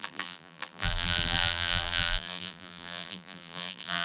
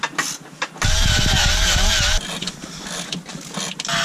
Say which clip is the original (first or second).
second